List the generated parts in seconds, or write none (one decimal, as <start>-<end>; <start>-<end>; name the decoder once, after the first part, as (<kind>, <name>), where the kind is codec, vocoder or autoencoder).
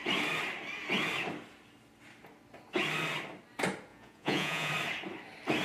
3.9-4.7 (vocoder, Vocos)